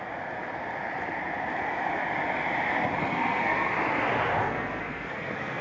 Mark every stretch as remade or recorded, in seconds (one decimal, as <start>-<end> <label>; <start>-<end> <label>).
0.0-3.0 recorded; 3.0-3.7 remade; 3.7-4.4 recorded; 4.4-5.6 remade